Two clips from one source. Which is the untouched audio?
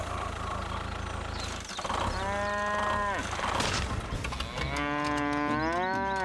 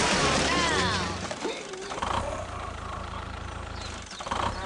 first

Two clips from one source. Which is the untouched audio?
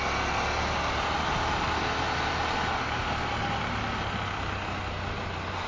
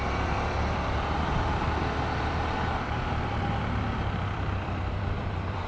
first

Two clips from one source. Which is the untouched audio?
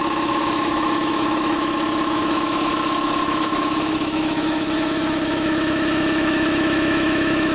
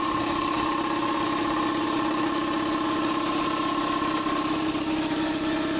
second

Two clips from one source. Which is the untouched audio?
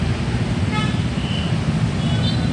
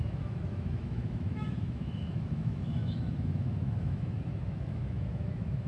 first